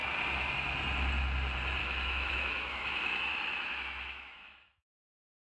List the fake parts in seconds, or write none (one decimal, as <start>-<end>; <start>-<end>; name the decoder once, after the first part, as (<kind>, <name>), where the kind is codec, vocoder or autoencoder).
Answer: 1.8-5.6 (autoencoder, DAC-VAE)